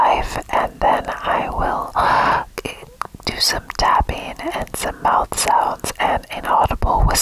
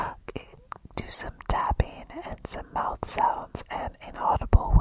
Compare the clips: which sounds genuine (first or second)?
first